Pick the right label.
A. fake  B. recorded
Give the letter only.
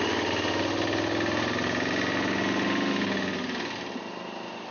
B